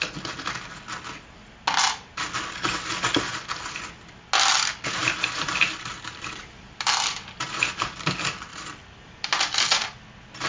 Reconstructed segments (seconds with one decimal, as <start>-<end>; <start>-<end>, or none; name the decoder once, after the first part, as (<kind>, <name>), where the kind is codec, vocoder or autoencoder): 5.0-7.1 (vocoder, BigVGAN v2); 8.5-9.7

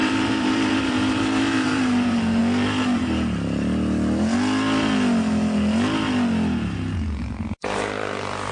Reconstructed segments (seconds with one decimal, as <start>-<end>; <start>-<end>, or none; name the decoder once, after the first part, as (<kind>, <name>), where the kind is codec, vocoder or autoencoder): 0.0-2.4 (vocoder, BigVGAN v2); 7.2-8.5

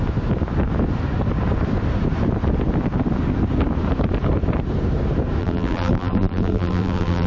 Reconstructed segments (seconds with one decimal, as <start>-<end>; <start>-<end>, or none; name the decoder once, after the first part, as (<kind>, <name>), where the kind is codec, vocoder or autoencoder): 5.4-7.3 (vocoder, BigVGAN v2)

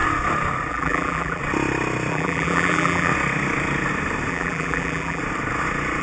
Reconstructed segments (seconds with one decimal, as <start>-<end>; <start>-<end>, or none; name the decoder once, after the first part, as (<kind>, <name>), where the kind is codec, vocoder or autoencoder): 0.7-1.4 (vocoder, BigVGAN v2); 2.1-3.1; 4.3-5.2

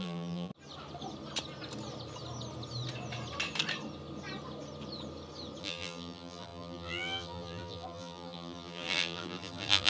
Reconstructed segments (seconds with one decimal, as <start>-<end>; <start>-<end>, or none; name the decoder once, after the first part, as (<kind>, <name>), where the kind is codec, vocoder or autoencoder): 0.0-0.5 (vocoder, BigVGAN v2); 5.6-9.9